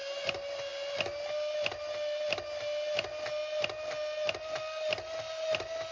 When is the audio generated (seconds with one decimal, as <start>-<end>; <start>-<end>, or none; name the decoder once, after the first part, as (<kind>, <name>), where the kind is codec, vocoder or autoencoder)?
none